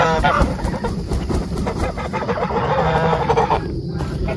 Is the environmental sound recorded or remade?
remade